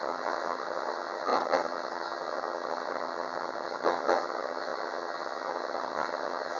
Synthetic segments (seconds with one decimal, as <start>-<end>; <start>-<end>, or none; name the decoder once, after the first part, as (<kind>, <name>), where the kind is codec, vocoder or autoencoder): 0.0-6.6 (vocoder, HiFi-GAN)